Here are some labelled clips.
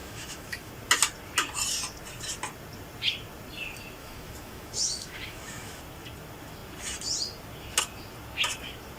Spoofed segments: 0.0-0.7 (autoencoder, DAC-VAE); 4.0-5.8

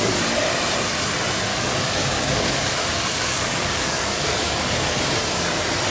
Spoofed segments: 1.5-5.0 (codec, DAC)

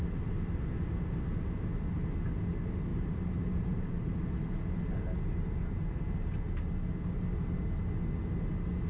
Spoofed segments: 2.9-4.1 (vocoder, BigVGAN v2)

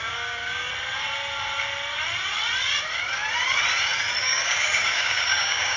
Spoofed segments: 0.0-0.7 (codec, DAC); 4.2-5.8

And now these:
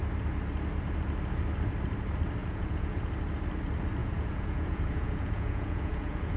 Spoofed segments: 2.4-3.0 (vocoder, Vocos); 4.0-6.4